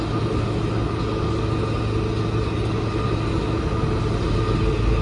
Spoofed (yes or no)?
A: no